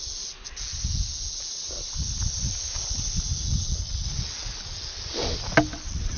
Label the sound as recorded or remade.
recorded